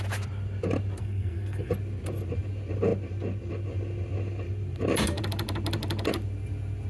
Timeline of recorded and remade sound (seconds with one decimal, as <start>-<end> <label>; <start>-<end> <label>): 0.0-1.0 recorded; 1.0-1.7 remade; 1.7-6.9 recorded